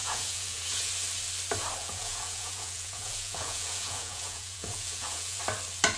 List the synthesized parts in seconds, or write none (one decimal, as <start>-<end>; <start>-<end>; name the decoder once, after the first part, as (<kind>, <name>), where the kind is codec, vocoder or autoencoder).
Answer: 0.0-0.9 (vocoder, Vocos); 1.8-5.4